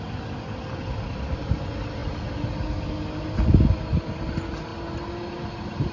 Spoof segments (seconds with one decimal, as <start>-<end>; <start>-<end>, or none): none